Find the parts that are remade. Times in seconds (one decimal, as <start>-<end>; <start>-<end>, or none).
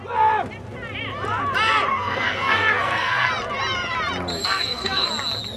1.9-3.3; 4.4-5.1